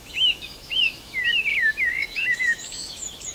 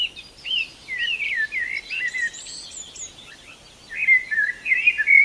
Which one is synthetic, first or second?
first